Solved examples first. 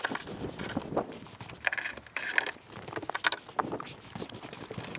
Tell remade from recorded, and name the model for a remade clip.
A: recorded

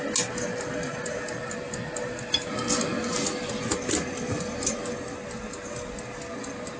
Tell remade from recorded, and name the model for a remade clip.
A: recorded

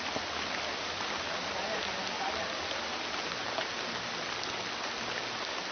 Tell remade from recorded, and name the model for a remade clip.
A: recorded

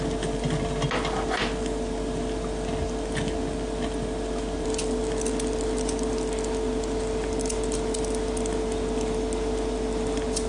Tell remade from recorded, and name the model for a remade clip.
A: recorded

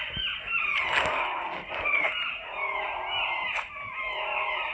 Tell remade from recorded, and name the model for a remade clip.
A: recorded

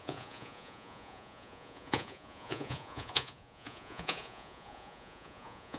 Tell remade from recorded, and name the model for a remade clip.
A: remade, vocoder, Vocos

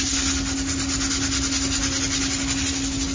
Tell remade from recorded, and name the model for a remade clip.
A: recorded